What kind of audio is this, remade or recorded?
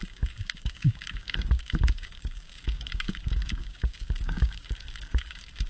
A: remade